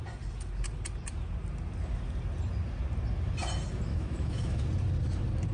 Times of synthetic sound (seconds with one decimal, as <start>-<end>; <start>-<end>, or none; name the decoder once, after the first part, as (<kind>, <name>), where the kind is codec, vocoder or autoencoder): 3.9-4.6 (autoencoder, DAC-VAE)